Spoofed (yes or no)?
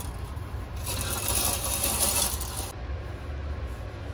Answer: no